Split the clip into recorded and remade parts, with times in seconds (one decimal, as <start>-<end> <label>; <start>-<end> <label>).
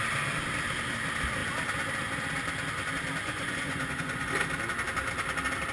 0.0-3.2 recorded; 3.2-4.3 remade; 4.3-5.7 recorded